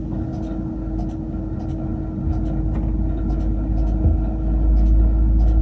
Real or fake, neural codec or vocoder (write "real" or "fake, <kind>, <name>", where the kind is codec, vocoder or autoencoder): real